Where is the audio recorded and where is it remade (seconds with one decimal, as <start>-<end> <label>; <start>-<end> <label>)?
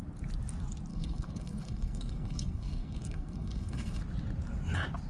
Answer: 0.0-0.9 recorded; 0.9-4.0 remade; 4.0-5.1 recorded